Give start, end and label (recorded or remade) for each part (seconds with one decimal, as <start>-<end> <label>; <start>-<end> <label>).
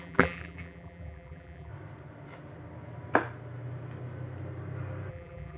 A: 0.0-1.7 remade; 1.7-5.1 recorded; 5.1-5.6 remade